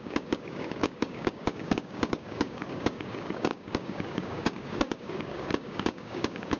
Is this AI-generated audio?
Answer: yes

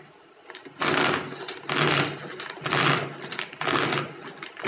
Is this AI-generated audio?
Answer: no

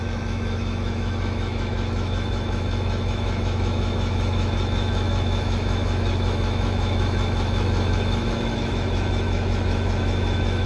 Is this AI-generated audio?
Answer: yes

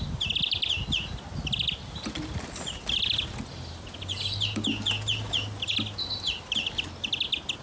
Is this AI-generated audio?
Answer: no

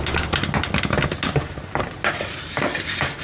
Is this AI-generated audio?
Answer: no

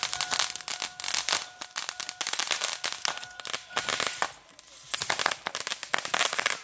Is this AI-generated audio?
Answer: no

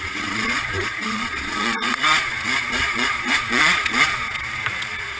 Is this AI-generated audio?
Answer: yes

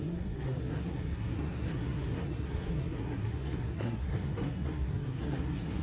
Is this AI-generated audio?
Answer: yes